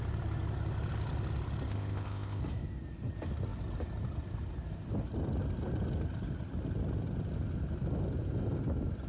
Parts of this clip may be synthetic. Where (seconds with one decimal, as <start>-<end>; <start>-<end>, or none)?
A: 1.7-2.4